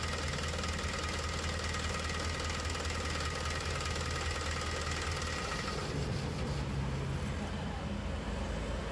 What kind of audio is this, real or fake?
real